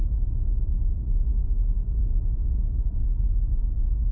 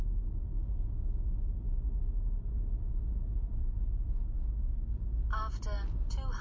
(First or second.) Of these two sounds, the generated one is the first